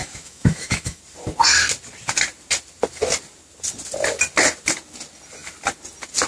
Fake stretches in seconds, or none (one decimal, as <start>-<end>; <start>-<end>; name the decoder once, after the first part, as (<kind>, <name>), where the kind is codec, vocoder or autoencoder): 0.0-1.0 (autoencoder, DAC-VAE)